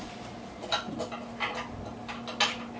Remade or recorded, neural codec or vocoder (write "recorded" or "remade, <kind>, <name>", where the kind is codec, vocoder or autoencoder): recorded